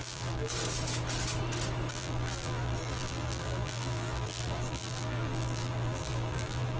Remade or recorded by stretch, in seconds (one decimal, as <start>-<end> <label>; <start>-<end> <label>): 0.0-0.5 remade; 0.5-1.9 recorded; 1.9-6.8 remade